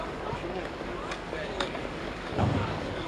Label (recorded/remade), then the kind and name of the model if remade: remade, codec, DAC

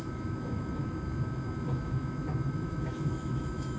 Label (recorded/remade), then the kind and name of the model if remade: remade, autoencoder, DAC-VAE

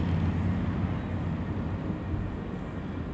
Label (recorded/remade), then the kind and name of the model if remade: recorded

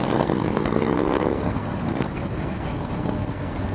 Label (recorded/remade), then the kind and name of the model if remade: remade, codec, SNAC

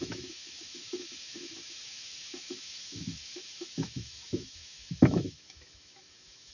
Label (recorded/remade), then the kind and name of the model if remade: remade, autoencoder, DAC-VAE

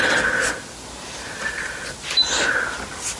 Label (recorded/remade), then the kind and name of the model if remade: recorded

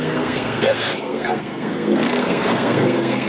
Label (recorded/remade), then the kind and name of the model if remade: remade, codec, SNAC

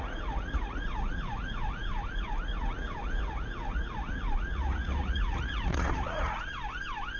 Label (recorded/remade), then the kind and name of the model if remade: remade, vocoder, Vocos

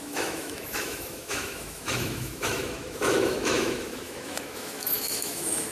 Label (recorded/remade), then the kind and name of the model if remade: remade, autoencoder, DAC-VAE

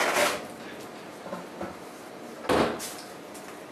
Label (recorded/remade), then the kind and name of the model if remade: recorded